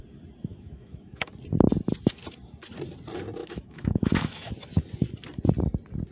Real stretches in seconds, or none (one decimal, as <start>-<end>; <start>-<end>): 0.0-0.5; 1.3-3.4; 4.5-6.1